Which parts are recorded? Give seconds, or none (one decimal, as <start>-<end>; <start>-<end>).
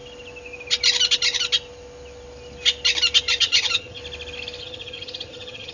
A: 0.0-3.4; 4.0-4.6